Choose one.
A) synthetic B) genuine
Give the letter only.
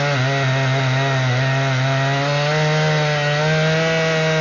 B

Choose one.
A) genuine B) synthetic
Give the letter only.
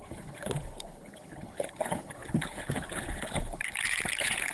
B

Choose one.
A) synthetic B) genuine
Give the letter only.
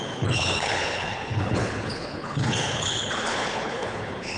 A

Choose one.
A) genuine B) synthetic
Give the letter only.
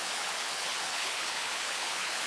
B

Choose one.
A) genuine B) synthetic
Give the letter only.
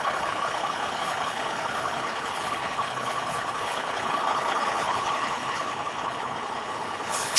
B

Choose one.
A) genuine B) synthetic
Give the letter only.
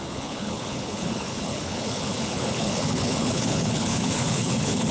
B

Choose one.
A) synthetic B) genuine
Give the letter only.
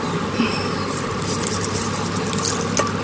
B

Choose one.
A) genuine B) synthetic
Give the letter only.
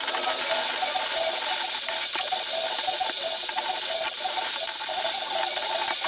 A